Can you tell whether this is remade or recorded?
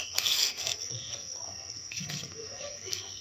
remade